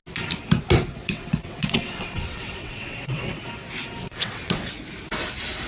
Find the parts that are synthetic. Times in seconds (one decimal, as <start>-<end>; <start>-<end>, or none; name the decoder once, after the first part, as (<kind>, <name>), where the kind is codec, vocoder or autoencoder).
1.0-3.4 (vocoder, WaveNeXt); 4.0-4.7